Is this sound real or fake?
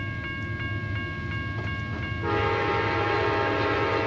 real